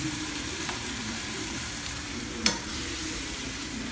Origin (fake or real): fake